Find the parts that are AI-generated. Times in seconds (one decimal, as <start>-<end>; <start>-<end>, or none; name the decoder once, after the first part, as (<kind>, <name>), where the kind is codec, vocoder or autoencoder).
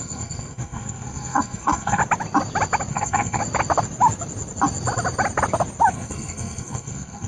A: 0.0-2.0 (codec, SNAC); 2.9-3.4; 5.9-7.3